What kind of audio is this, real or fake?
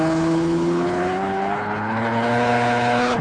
fake